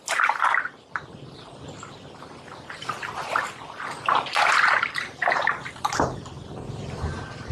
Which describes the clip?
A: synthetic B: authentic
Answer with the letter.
B